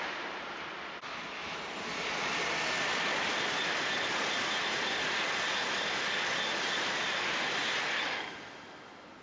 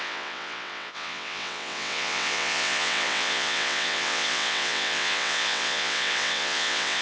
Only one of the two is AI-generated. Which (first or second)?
second